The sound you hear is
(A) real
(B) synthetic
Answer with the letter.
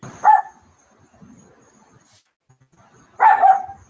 A